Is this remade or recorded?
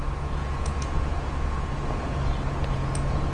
remade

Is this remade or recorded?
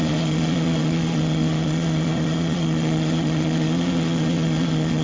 remade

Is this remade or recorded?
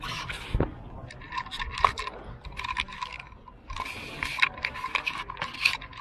recorded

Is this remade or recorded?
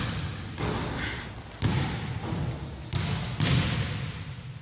recorded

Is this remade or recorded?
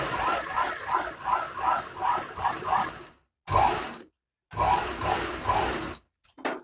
recorded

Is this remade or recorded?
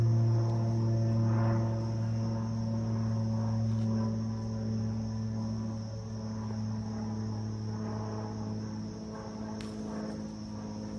recorded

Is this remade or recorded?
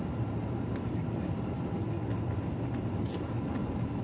recorded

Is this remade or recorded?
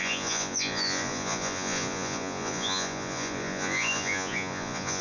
remade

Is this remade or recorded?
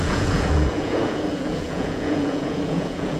remade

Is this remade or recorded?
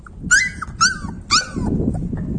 recorded